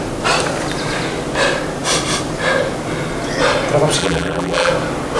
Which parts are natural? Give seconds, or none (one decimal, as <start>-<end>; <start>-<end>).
0.0-4.0; 4.7-5.2